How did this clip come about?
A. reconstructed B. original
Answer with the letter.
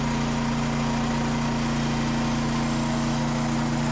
B